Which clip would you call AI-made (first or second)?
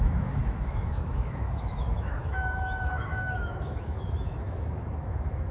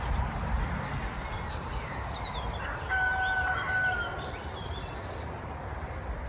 first